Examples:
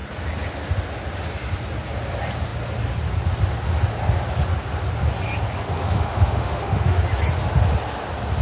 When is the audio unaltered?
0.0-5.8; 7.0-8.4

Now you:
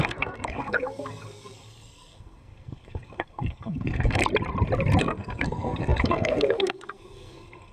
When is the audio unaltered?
4.2-5.0

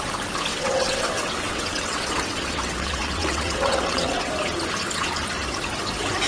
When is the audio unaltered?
0.0-0.5; 4.3-6.3